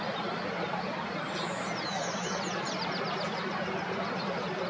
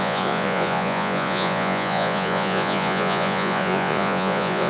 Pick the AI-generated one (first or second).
second